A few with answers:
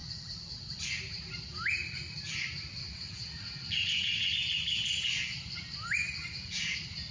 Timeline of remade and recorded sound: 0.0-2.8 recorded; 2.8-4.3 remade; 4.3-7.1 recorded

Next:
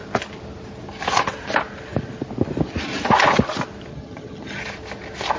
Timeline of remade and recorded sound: 0.0-3.9 recorded; 3.9-4.6 remade; 4.6-5.4 recorded